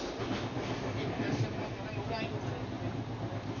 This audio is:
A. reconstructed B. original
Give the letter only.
B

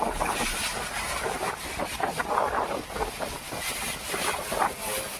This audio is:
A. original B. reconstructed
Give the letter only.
A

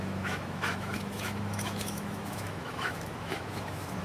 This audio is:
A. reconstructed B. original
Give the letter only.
A